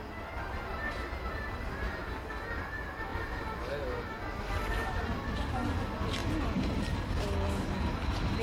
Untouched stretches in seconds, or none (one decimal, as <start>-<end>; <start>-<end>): 0.0-8.4